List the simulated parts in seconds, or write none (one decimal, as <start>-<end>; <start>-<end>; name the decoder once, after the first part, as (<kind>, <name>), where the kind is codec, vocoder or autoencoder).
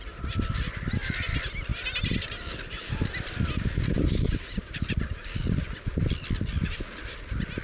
none